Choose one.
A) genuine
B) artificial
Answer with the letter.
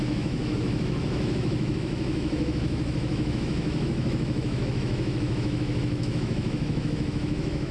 B